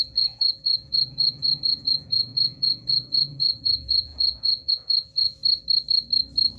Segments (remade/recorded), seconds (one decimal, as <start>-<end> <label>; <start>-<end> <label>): 0.0-5.4 remade; 5.4-6.6 recorded

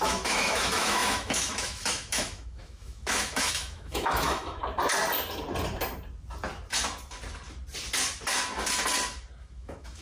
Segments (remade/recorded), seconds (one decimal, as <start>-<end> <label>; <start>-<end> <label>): 0.0-4.6 remade; 4.6-9.4 recorded; 9.4-10.0 remade

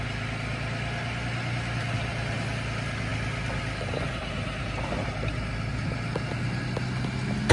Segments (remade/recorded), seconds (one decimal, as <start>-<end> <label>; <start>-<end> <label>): 0.0-7.5 recorded

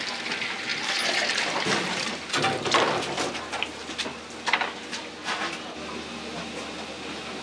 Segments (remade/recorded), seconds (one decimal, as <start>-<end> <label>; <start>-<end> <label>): 0.0-7.4 recorded

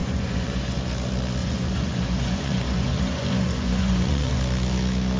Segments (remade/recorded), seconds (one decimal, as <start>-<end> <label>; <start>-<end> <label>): 0.0-0.8 remade; 0.8-1.4 recorded; 1.4-4.4 remade; 4.4-5.2 recorded